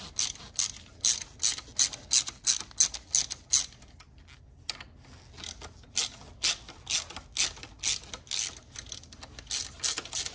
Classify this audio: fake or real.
real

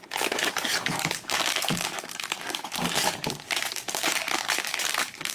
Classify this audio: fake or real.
fake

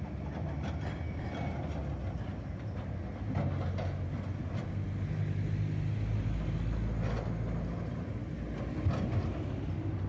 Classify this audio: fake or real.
real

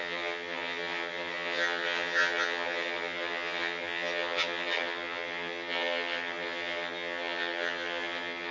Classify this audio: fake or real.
fake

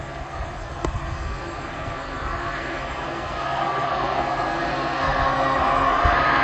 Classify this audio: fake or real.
fake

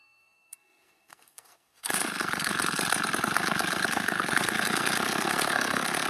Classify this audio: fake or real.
fake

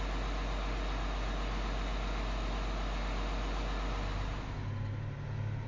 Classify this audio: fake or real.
real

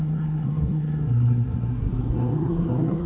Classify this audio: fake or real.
fake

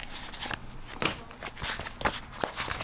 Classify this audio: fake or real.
real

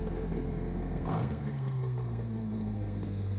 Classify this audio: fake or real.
fake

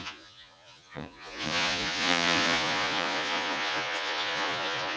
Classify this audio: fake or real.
fake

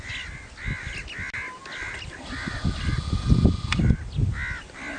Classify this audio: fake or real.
real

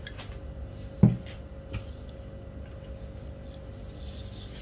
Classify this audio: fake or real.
real